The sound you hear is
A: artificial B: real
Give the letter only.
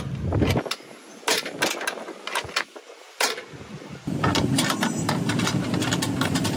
B